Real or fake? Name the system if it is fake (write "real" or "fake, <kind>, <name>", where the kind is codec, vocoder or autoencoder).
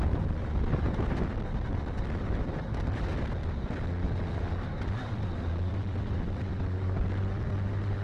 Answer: fake, vocoder, BigVGAN v2